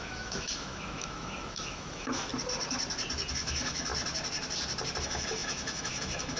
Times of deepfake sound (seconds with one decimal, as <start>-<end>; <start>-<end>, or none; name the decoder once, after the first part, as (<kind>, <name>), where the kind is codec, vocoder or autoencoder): 0.0-2.3 (autoencoder, DAC-VAE); 3.3-3.9; 5.0-6.4